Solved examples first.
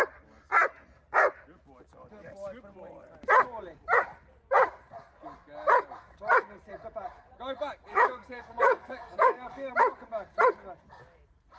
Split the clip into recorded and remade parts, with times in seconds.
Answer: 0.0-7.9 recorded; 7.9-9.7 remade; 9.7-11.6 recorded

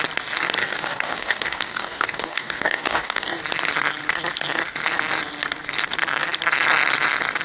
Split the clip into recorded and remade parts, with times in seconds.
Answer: 0.0-0.6 recorded; 0.6-3.4 remade; 3.4-7.4 recorded

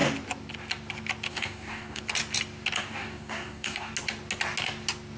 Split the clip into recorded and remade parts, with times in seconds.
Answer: 0.0-1.3 recorded; 1.3-2.0 remade; 2.0-2.8 recorded; 2.8-3.9 remade; 3.9-5.2 recorded

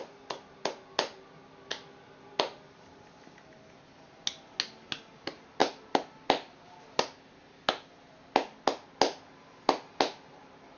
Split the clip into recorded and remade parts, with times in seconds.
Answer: 0.0-10.8 recorded

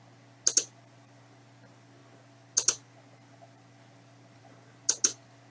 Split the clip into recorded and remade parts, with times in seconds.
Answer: 0.0-5.5 recorded

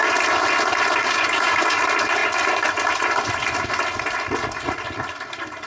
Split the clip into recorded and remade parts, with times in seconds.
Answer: 0.0-1.0 recorded; 1.0-1.8 remade; 1.8-5.7 recorded